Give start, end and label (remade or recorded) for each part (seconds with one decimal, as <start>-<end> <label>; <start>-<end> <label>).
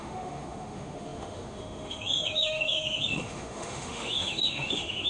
0.0-5.1 remade